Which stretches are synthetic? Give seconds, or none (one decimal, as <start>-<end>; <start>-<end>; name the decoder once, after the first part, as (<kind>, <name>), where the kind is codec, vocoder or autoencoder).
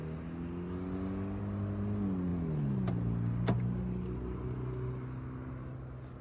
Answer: none